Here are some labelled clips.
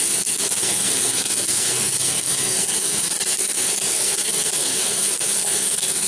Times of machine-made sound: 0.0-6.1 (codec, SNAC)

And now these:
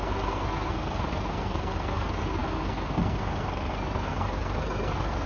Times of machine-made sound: 0.0-5.3 (codec, SNAC)

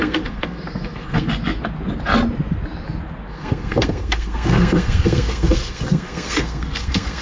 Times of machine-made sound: 0.0-1.3 (codec, SNAC); 3.3-7.2